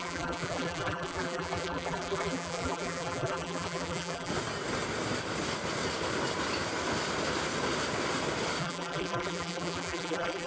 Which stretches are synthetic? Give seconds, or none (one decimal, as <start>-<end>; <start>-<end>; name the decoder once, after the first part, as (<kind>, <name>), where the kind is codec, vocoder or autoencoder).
0.0-4.3 (vocoder, BigVGAN v2); 8.6-10.5